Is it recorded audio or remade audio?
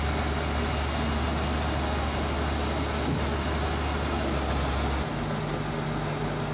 recorded